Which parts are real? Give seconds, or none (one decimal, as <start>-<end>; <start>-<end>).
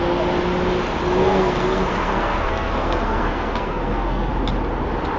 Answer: 0.0-1.2; 4.3-5.2